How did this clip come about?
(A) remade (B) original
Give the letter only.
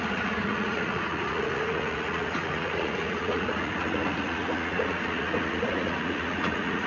A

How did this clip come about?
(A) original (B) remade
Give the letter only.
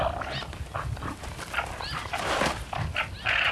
A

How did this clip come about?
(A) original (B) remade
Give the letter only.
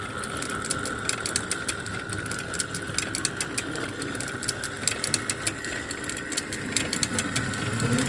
A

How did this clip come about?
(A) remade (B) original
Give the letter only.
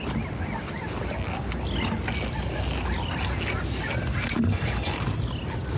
B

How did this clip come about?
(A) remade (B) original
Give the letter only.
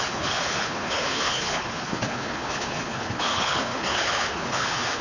A